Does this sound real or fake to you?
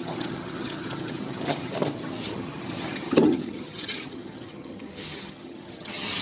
fake